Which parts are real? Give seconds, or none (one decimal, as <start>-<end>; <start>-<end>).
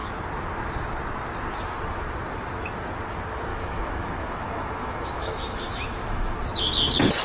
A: 0.0-3.5; 6.3-7.2